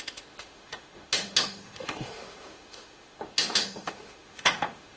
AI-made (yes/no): yes